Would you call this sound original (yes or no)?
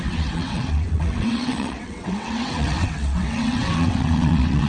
no